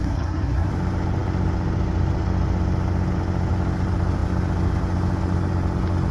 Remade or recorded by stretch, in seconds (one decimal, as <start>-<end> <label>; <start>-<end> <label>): 0.0-0.7 remade; 0.7-6.1 recorded

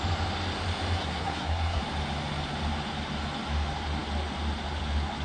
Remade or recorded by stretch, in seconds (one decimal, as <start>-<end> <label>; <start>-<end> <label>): 0.0-1.0 recorded; 1.0-1.8 remade; 1.8-5.2 recorded

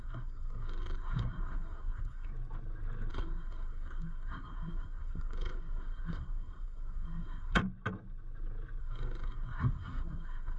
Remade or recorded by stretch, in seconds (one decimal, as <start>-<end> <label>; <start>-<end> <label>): 0.0-2.3 remade; 2.3-3.1 recorded; 3.1-7.6 remade; 7.6-8.8 recorded; 8.8-10.6 remade

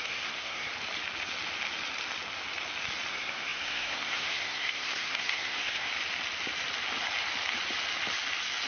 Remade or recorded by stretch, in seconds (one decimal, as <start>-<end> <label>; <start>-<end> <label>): 0.0-0.7 remade; 0.7-3.1 recorded; 3.1-5.9 remade; 5.9-8.7 recorded

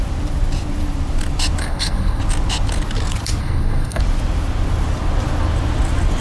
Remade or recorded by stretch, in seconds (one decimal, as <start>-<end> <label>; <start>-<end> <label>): 0.0-1.6 recorded; 1.6-2.2 remade; 2.2-3.4 recorded; 3.4-4.0 remade; 4.0-6.2 recorded

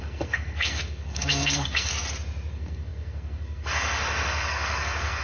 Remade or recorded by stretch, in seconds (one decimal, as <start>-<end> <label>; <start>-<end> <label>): 0.0-1.9 remade; 1.9-2.5 recorded; 2.5-5.2 remade

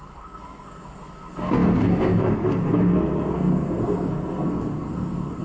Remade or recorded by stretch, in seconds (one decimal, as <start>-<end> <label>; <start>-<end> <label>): 0.0-5.4 remade

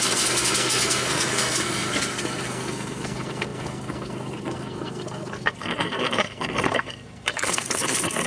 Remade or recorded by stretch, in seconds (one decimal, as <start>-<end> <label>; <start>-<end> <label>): 0.0-8.3 remade